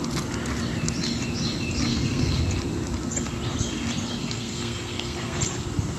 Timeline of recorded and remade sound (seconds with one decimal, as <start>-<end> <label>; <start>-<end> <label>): 0.0-1.9 recorded; 1.9-2.4 remade; 2.4-4.2 recorded; 4.2-5.4 remade; 5.4-6.0 recorded